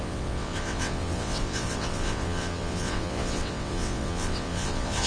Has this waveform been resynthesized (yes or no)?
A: yes